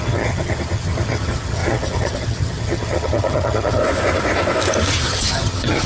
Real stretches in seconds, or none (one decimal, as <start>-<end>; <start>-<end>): 3.8-4.9